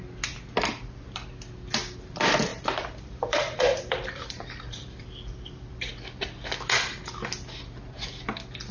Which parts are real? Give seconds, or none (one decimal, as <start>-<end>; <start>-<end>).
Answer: 0.0-2.5; 5.9-8.7